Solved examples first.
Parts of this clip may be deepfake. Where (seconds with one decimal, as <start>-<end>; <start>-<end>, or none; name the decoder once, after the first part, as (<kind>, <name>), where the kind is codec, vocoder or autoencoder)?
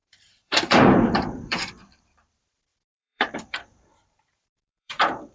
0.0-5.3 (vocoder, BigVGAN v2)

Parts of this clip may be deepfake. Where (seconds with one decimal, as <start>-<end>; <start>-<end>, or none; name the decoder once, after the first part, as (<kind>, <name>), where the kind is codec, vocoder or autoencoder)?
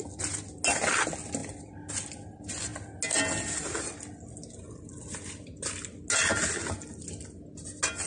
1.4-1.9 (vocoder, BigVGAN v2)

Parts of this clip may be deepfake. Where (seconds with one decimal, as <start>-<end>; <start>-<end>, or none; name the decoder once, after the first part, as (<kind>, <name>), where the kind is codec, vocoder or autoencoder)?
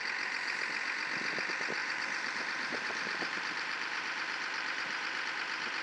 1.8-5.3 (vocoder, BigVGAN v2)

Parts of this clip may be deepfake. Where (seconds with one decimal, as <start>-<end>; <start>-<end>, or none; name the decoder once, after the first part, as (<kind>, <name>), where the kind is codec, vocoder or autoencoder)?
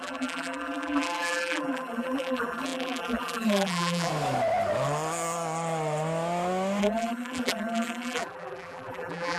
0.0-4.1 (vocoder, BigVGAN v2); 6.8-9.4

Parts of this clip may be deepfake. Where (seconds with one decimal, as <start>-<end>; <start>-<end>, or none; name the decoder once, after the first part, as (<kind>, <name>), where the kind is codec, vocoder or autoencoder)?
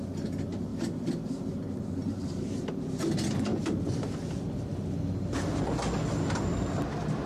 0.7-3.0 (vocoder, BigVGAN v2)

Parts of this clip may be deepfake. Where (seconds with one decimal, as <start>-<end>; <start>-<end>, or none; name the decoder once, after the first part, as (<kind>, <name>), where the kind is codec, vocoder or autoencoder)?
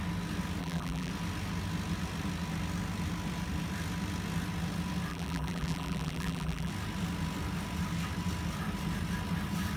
0.6-1.1 (vocoder, BigVGAN v2); 5.1-6.7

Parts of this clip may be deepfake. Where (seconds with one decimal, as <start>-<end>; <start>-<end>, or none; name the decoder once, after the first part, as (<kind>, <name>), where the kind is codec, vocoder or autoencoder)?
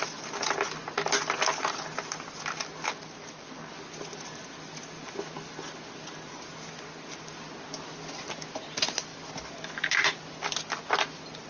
9.1-10.8 (vocoder, BigVGAN v2)